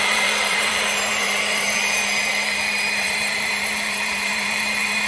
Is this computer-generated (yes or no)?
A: yes